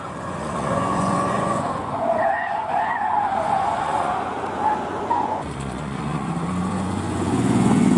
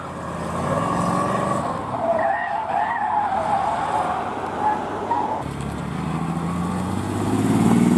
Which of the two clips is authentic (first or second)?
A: second